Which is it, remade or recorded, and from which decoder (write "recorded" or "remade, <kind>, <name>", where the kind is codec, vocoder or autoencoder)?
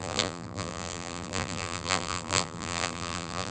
remade, vocoder, BigVGAN v2